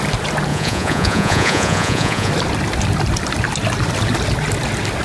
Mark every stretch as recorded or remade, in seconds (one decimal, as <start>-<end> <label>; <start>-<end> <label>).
0.0-0.5 recorded; 0.5-2.3 remade; 2.3-5.0 recorded